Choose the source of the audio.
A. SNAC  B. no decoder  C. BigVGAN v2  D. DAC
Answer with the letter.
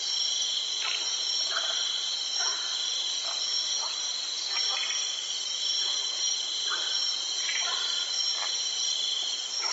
C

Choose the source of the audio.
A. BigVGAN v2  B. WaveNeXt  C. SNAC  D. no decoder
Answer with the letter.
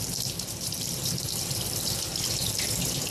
A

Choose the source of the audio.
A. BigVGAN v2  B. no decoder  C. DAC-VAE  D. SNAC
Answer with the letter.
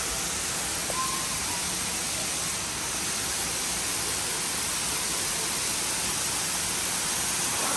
B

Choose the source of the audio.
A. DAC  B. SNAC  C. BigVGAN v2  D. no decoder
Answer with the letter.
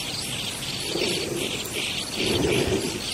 D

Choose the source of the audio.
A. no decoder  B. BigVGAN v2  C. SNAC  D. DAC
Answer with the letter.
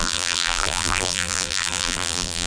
B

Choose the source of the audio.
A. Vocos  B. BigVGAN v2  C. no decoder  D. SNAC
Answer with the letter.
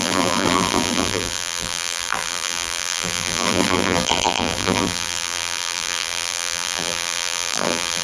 B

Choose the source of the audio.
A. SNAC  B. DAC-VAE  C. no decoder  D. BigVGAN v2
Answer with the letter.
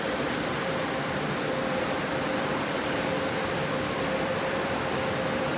D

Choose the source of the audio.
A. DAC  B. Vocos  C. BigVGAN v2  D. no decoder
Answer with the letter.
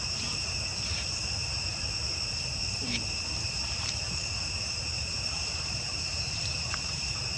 C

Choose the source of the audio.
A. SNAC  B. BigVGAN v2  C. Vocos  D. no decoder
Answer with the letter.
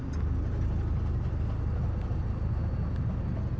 D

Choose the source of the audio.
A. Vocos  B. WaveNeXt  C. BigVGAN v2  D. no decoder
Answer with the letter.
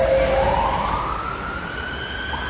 D